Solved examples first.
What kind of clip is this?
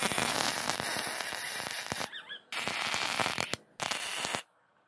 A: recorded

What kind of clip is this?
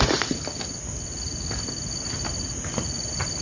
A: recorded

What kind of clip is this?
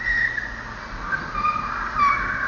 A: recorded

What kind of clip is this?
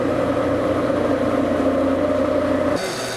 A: recorded